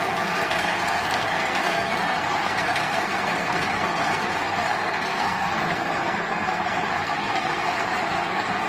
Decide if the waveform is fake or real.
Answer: fake